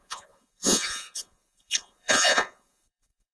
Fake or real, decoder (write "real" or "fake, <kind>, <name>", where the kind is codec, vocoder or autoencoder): fake, vocoder, Vocos